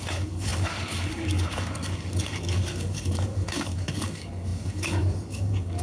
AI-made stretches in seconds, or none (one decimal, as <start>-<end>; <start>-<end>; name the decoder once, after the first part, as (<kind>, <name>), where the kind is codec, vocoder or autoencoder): 0.0-5.8 (codec, DAC)